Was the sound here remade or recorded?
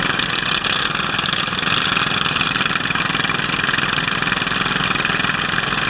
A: recorded